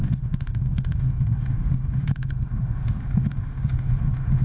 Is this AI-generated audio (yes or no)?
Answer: yes